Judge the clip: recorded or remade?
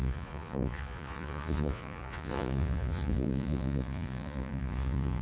remade